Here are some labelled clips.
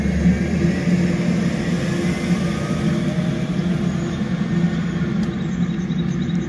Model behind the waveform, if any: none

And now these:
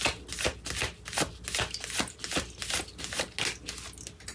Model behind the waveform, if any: none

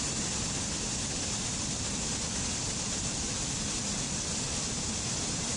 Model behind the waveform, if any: none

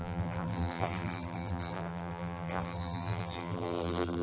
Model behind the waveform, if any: vocoder, BigVGAN v2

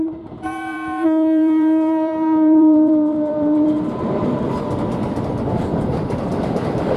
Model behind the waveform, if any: vocoder, BigVGAN v2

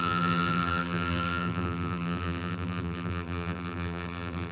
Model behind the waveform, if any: vocoder, BigVGAN v2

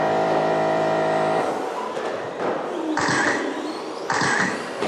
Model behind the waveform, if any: vocoder, BigVGAN v2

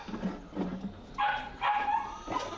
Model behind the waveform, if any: none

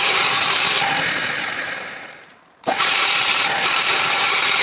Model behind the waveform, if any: vocoder, BigVGAN v2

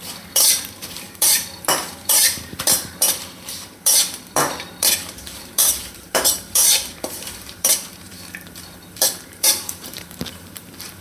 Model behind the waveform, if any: vocoder, BigVGAN v2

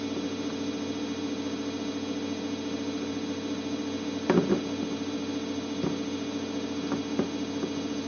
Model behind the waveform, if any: none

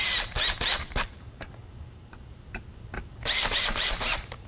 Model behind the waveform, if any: vocoder, BigVGAN v2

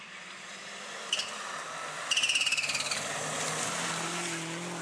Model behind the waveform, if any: none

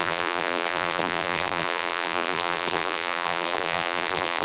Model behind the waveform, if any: vocoder, BigVGAN v2